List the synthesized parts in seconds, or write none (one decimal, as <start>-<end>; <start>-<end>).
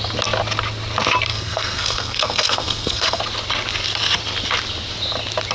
1.3-3.2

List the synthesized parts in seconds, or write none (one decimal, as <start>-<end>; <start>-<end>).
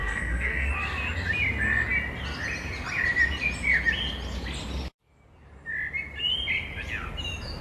0.0-0.7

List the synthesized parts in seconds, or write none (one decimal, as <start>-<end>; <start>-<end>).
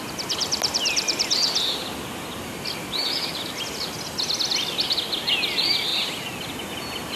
none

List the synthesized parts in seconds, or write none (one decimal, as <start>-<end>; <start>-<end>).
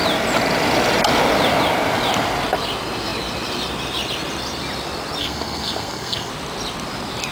5.2-6.3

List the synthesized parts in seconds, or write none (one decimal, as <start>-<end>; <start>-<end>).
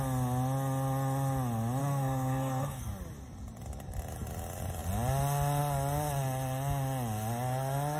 1.8-2.9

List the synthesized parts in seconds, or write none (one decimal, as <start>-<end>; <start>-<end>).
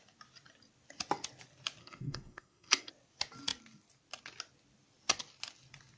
1.8-2.9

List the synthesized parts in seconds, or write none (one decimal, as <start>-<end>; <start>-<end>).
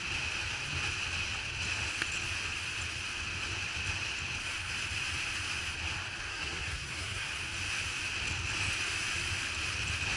6.3-7.3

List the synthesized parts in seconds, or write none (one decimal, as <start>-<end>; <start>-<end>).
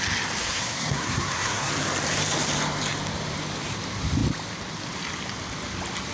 0.4-1.7